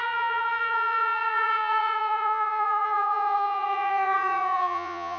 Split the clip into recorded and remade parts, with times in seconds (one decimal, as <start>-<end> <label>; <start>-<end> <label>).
0.0-5.2 remade